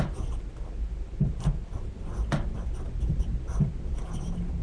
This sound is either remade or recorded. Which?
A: recorded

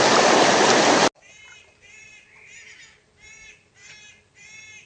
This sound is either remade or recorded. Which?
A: recorded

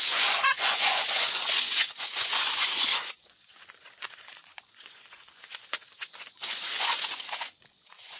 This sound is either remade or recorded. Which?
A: remade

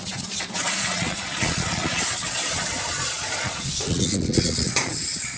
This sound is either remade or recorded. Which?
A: remade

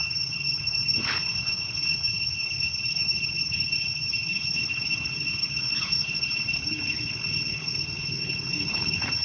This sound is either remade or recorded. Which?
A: remade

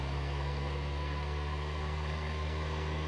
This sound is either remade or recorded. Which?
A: remade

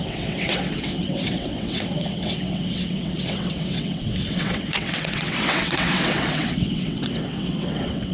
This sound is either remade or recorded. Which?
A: remade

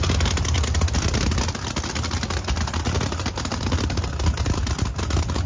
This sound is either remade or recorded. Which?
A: recorded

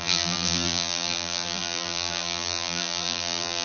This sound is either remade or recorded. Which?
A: remade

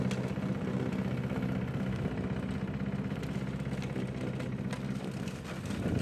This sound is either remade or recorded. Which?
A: recorded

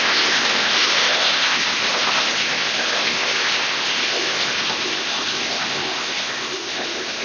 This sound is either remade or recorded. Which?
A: remade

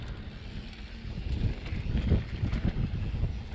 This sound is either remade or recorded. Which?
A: recorded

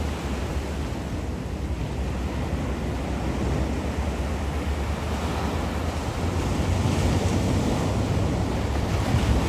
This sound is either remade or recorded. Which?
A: recorded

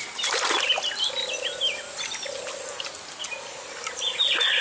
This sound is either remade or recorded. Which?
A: recorded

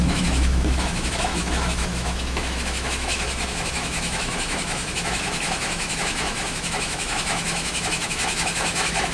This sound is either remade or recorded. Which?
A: remade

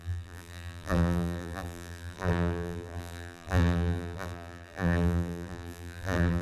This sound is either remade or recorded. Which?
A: remade